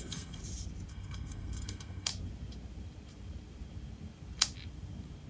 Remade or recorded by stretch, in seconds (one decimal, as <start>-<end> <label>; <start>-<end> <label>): 0.0-0.4 remade; 0.4-0.9 recorded; 0.9-2.1 remade; 2.1-5.3 recorded